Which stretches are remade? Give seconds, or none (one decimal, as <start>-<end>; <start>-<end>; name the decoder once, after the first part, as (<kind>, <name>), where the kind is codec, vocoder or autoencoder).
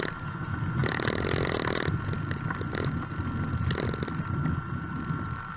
none